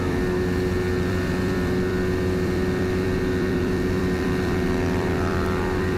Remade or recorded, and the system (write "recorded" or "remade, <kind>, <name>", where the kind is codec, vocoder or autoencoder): remade, vocoder, BigVGAN v2